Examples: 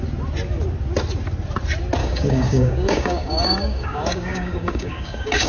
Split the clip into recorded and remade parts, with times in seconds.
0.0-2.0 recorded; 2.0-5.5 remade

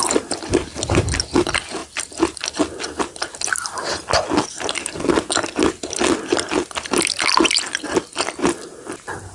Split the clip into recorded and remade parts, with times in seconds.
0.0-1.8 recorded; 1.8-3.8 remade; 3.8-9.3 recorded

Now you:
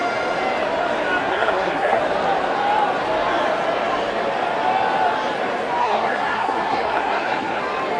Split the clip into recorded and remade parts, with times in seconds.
0.0-1.2 recorded; 1.2-2.0 remade; 2.0-5.8 recorded; 5.8-7.6 remade; 7.6-8.0 recorded

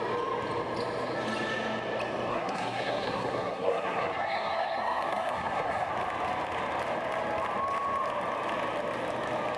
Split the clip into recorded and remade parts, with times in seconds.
0.0-2.3 recorded; 2.3-5.9 remade; 5.9-9.6 recorded

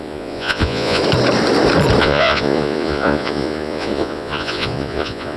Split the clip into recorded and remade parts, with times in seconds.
0.0-1.0 remade; 1.0-2.0 recorded; 2.0-5.4 remade

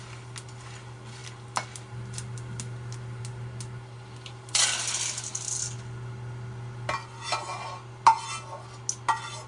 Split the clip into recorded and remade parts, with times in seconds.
0.0-9.5 recorded

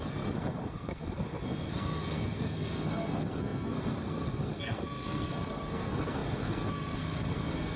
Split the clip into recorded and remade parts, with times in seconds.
0.0-7.8 remade

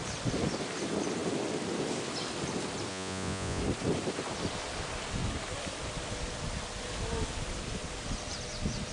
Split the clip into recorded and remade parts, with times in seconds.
0.0-2.9 recorded; 2.9-3.6 remade; 3.6-8.9 recorded